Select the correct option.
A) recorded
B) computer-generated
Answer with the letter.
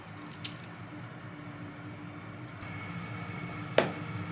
A